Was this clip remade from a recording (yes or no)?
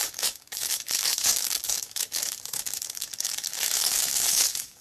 yes